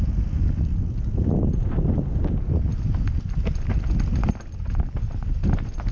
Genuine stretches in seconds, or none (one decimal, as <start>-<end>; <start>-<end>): 0.0-5.9